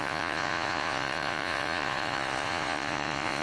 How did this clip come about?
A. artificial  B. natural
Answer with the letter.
A